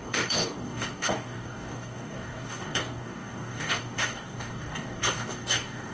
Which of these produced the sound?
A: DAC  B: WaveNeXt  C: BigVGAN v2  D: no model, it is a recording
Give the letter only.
A